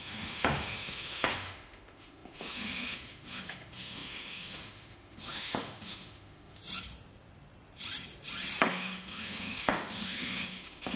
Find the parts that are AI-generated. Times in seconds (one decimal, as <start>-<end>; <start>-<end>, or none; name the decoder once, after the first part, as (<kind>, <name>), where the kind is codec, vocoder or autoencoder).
0.0-6.6 (autoencoder, DAC-VAE); 8.7-11.0